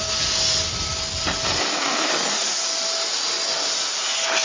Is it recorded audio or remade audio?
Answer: recorded